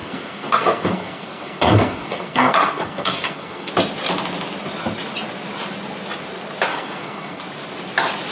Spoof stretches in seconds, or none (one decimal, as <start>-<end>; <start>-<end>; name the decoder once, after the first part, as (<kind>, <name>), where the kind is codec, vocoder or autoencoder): 0.0-3.7 (codec, SNAC); 6.7-7.4